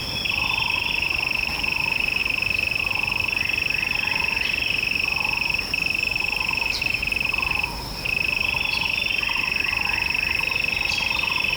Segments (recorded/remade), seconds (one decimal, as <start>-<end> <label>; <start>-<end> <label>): 0.0-6.1 recorded; 6.1-8.1 remade; 8.1-11.6 recorded